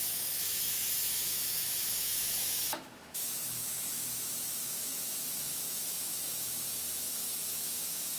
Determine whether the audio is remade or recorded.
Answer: remade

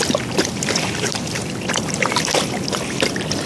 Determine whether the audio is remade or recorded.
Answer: recorded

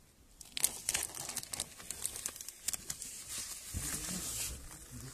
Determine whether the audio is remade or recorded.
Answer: recorded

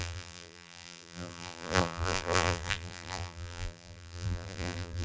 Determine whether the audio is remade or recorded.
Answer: remade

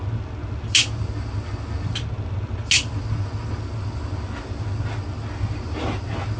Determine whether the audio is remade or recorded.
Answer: recorded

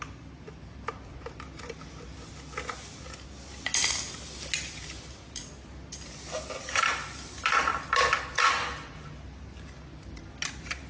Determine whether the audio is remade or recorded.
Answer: recorded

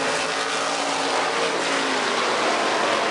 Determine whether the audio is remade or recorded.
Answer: recorded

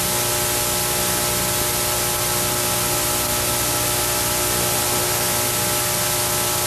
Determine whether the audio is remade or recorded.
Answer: recorded